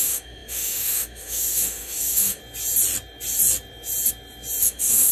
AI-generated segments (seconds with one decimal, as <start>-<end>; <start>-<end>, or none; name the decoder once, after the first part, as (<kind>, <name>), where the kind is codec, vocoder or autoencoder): 0.0-2.4 (autoencoder, DAC-VAE); 4.6-5.1

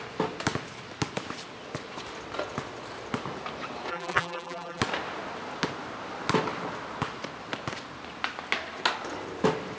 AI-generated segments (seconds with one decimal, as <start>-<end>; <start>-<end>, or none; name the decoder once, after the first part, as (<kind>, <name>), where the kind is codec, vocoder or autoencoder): 3.9-4.8 (vocoder, BigVGAN v2)